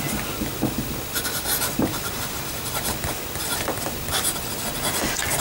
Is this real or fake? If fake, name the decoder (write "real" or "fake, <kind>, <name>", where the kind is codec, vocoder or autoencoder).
real